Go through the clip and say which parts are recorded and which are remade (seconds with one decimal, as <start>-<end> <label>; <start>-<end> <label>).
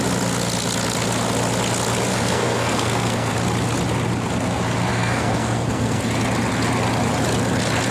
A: 0.0-2.1 recorded; 2.1-3.3 remade; 3.3-4.9 recorded; 4.9-6.0 remade; 6.0-7.9 recorded